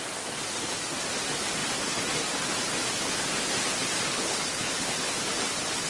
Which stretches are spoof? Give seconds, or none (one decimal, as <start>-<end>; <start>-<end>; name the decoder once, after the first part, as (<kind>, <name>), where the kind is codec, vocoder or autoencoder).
4.1-5.1 (codec, HILCodec)